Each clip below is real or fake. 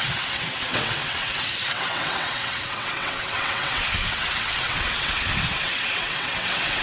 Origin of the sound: fake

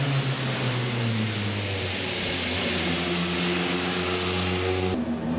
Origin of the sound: real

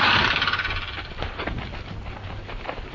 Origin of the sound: real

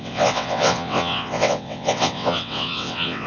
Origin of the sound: fake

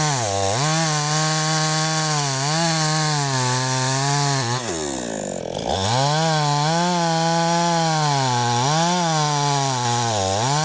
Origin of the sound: real